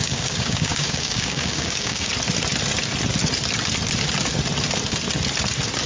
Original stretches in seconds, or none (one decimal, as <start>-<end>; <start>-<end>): 2.1-5.9